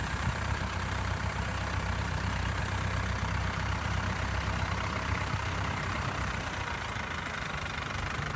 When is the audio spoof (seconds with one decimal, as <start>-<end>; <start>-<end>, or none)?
0.0-2.6; 3.4-5.9